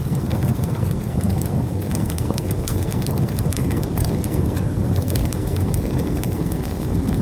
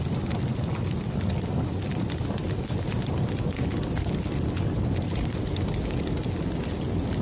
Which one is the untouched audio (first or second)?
second